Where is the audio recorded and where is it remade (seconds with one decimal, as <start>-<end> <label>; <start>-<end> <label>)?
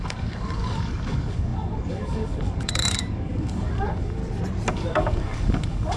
0.0-4.2 remade; 4.2-4.7 recorded; 4.7-6.0 remade